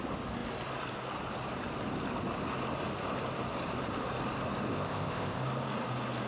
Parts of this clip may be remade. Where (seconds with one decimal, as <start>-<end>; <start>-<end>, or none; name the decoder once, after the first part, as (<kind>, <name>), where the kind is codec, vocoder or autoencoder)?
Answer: 4.7-5.4 (codec, ZipCodec)

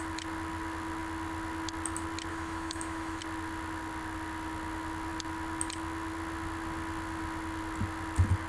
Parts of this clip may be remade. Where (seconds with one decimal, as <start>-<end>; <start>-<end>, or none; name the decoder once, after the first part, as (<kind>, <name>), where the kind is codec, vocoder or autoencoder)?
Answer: 2.3-3.2 (autoencoder, DAC-VAE)

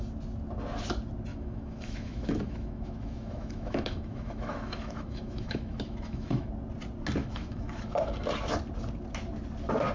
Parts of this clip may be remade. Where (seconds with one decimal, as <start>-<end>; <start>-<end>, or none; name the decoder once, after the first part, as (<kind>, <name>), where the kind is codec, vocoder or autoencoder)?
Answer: 1.3-6.5 (autoencoder, DAC-VAE); 7.2-8.0